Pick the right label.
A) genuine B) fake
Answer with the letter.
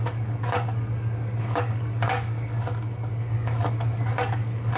B